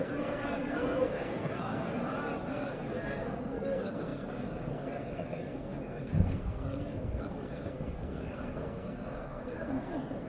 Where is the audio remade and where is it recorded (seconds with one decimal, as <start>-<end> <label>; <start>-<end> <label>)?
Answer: 0.0-2.0 remade; 2.0-2.5 recorded; 2.5-10.3 remade